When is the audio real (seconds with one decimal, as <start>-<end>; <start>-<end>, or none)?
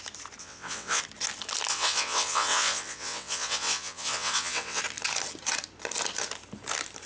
0.0-0.4; 1.0-1.7; 4.8-7.1